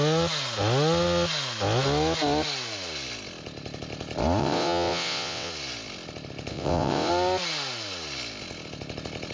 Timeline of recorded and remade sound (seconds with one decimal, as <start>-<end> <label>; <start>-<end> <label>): 0.0-4.4 recorded; 4.4-5.5 remade; 5.5-6.5 recorded; 6.5-7.1 remade; 7.1-9.3 recorded